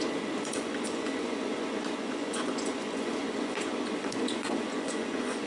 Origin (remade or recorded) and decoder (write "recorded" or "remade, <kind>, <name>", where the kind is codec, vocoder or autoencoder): remade, vocoder, Vocos